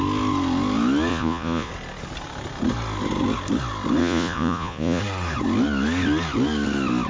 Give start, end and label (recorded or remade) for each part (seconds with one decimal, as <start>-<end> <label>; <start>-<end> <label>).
0.0-1.1 recorded; 1.1-1.7 remade; 1.7-4.0 recorded; 4.0-5.0 remade; 5.0-7.1 recorded

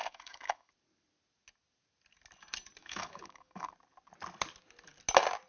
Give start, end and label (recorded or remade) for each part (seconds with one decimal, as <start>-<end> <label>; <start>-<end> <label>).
0.0-0.7 remade; 0.7-2.8 recorded; 2.8-3.7 remade; 3.7-5.5 recorded

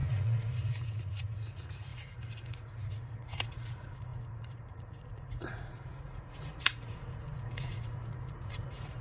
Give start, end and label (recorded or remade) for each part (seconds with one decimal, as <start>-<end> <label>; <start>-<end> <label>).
0.0-9.0 remade

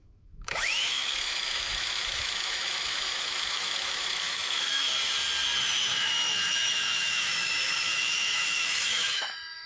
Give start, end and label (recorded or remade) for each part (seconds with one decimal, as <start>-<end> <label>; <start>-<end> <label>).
0.0-4.9 remade; 4.9-5.6 recorded; 5.6-9.7 remade

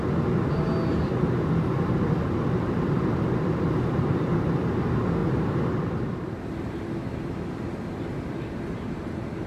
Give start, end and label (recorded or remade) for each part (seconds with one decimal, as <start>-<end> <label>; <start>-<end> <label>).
0.0-5.2 recorded; 5.2-6.0 remade; 6.0-9.5 recorded